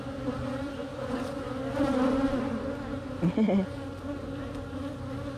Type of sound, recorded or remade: recorded